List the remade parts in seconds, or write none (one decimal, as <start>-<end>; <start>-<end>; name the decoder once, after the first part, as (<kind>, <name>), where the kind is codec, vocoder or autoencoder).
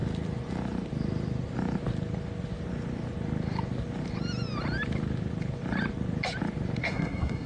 6.8-7.5 (codec, SNAC)